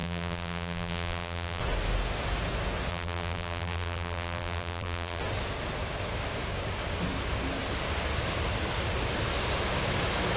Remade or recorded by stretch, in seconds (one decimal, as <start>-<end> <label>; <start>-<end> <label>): 0.0-1.6 remade; 1.6-2.9 recorded; 2.9-5.2 remade; 5.2-10.4 recorded

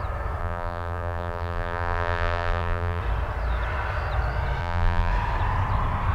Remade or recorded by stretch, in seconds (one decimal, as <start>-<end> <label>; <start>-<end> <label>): 0.0-0.4 recorded; 0.4-3.0 remade; 3.0-4.6 recorded; 4.6-5.1 remade; 5.1-6.1 recorded

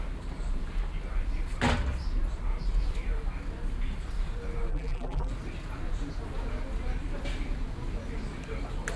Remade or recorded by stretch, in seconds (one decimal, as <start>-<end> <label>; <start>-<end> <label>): 0.0-4.7 recorded; 4.7-5.3 remade; 5.3-9.0 recorded

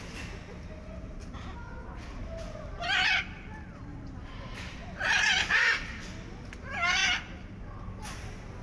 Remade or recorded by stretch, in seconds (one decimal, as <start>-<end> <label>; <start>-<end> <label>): 0.0-3.9 recorded; 3.9-5.7 remade; 5.7-8.6 recorded

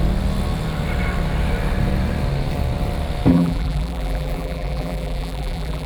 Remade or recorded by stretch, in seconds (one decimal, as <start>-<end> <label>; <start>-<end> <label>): 0.0-3.3 recorded; 3.3-5.9 remade

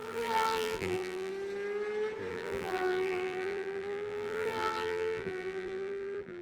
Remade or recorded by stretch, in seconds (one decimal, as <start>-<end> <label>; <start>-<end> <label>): 0.0-1.3 remade; 1.3-2.3 recorded; 2.3-6.4 remade